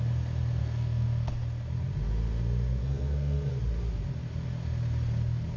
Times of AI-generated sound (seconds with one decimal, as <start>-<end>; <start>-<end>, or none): 0.6-1.3; 2.8-3.5